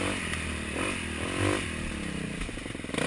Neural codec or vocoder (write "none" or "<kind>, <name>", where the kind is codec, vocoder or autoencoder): none